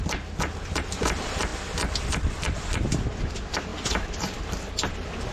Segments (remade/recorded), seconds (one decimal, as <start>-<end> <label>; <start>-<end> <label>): 0.0-3.7 remade; 3.7-4.4 recorded; 4.4-5.3 remade